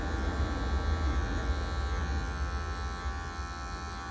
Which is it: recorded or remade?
recorded